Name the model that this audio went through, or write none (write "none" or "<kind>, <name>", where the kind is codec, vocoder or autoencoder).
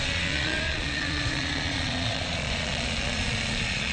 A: vocoder, Vocos